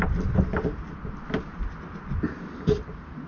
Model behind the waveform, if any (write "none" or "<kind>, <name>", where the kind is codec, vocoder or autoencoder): none